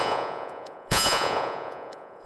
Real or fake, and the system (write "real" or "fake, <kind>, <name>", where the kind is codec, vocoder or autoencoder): fake, vocoder, Vocos